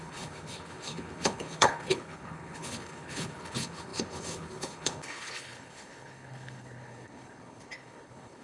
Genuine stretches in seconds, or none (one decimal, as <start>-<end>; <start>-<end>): none